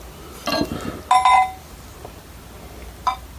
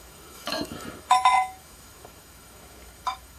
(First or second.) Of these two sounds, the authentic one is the first